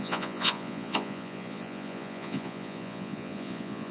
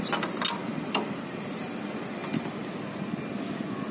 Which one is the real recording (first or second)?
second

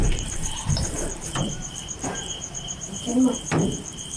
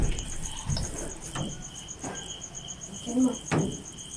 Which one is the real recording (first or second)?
second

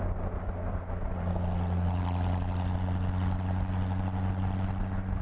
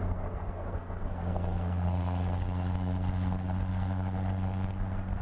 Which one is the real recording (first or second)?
first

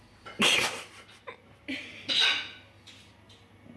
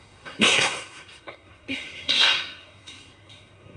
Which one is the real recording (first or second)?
first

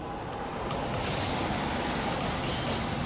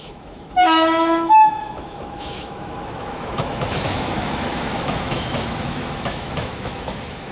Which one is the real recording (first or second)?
first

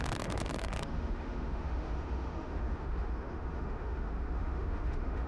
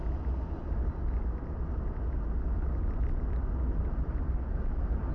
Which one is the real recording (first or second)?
second